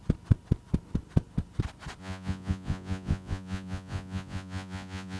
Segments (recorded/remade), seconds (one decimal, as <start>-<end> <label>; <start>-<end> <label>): 0.0-2.0 recorded; 2.0-5.2 remade